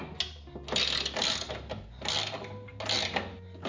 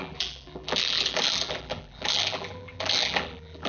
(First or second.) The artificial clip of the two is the second